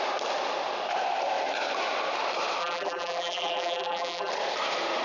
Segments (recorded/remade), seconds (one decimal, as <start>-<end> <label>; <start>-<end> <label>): 0.0-2.6 recorded; 2.6-4.3 remade; 4.3-5.0 recorded